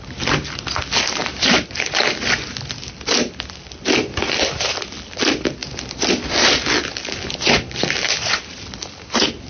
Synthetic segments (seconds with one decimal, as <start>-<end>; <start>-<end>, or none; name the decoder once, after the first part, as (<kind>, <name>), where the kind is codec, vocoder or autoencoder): none